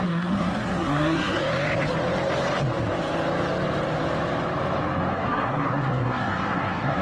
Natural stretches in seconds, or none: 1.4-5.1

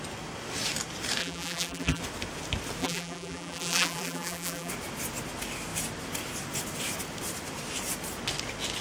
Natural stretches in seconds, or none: 0.0-1.2; 2.0-2.8; 4.7-8.8

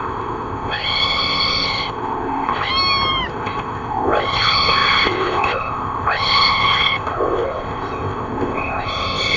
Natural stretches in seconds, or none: 2.7-3.3

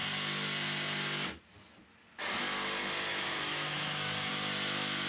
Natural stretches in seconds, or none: 0.0-3.1; 4.3-5.1

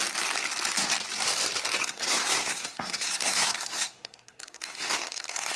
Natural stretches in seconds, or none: 0.0-1.8

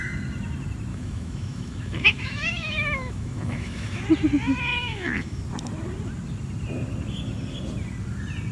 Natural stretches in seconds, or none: 0.0-0.9; 4.0-4.7; 5.4-8.5